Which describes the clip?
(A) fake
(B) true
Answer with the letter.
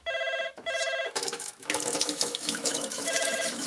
A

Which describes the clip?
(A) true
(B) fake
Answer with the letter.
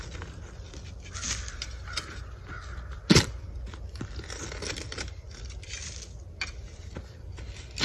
A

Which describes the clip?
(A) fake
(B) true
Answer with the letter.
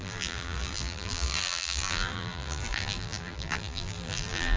A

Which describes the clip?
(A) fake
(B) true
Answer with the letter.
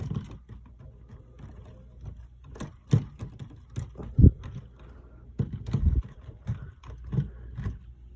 B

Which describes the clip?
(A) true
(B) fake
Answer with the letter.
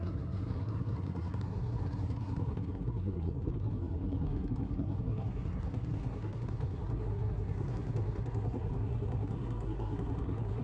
B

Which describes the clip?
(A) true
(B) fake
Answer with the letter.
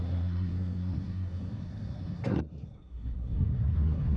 B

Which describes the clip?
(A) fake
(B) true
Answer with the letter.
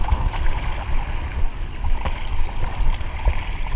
B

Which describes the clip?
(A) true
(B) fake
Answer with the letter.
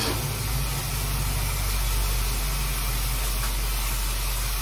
A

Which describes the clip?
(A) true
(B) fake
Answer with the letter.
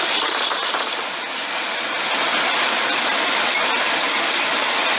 B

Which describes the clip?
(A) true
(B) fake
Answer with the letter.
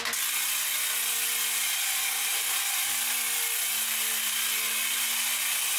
A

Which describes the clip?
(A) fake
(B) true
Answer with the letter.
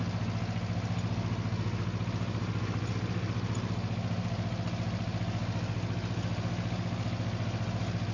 B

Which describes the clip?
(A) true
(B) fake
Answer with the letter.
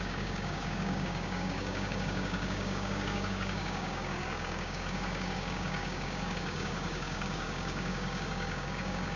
B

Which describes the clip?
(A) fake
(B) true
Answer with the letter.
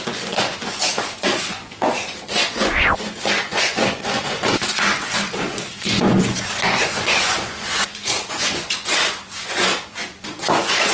A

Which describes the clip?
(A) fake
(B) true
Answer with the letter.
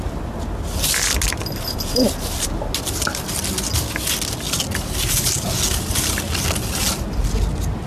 B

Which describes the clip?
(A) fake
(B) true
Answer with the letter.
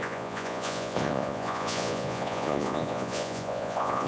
A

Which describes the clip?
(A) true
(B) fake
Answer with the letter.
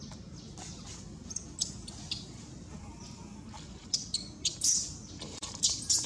A